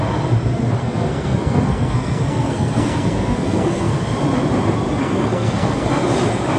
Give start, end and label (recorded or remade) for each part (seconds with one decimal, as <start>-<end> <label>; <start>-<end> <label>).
0.0-0.8 recorded; 0.8-4.0 remade; 4.0-5.0 recorded; 5.0-5.9 remade; 5.9-6.6 recorded